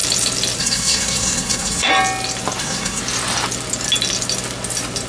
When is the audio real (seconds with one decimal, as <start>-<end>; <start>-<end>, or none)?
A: 0.0-0.6; 1.9-2.6; 3.0-5.1